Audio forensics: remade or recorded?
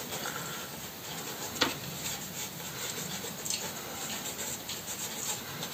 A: recorded